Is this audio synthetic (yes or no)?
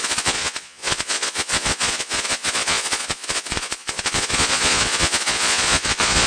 yes